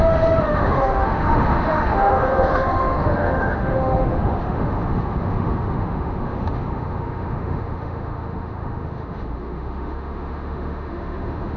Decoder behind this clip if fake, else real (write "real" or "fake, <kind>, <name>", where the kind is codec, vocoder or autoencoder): fake, autoencoder, DAC-VAE